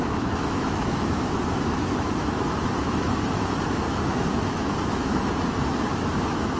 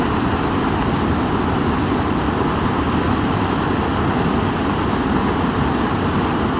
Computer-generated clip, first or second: first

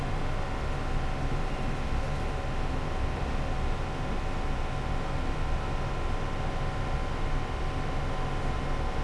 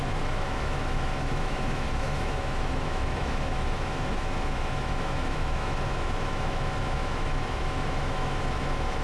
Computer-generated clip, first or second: second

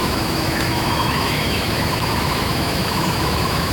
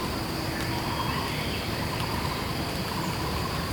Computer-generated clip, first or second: first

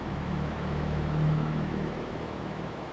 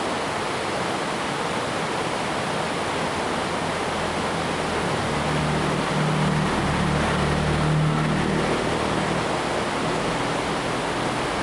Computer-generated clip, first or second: first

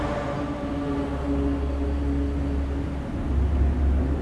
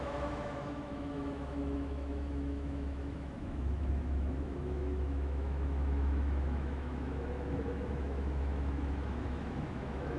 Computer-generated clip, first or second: second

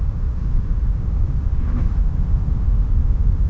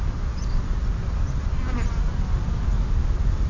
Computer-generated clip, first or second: first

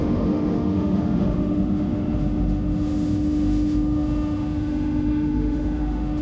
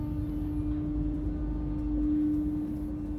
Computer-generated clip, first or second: first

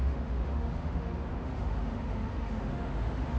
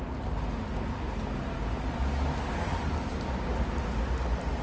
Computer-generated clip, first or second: first